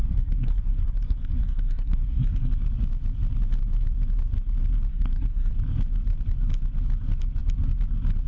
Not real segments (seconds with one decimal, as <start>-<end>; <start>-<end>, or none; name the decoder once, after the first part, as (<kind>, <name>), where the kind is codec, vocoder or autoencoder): 0.0-2.5 (codec, SNAC); 4.9-5.5